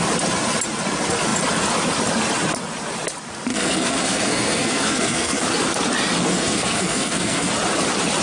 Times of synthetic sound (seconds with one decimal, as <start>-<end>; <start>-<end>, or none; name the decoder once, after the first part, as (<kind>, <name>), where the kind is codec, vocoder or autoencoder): 3.5-5.4 (codec, SNAC); 6.3-7.5